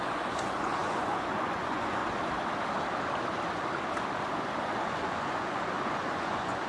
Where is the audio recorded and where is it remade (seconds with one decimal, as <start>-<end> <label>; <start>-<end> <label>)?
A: 0.0-2.0 remade; 2.0-4.2 recorded; 4.2-6.7 remade